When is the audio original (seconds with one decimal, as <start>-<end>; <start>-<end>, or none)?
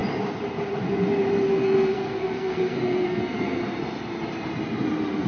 0.0-1.5; 3.6-5.3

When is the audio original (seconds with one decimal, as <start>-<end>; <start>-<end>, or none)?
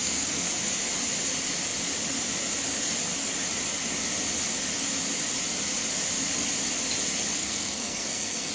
0.5-7.4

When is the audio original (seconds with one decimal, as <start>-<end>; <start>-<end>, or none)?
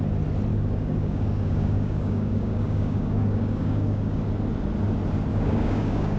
0.0-0.5; 4.2-5.3